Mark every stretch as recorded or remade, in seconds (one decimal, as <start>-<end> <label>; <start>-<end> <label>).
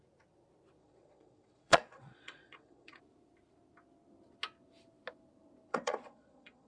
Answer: 0.0-0.8 recorded; 0.8-3.0 remade; 3.0-5.7 recorded; 5.7-6.7 remade